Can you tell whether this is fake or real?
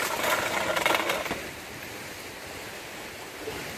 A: fake